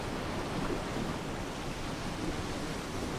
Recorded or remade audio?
recorded